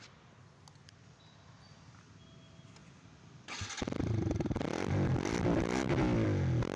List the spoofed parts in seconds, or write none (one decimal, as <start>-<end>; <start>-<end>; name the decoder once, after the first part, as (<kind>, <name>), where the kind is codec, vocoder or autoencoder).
none